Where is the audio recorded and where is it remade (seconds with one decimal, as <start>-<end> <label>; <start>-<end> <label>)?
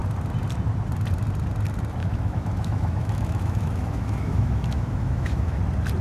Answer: 0.0-2.0 recorded; 2.0-5.6 remade; 5.6-6.0 recorded